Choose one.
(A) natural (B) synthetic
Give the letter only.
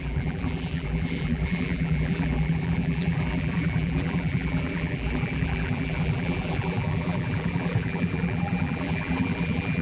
B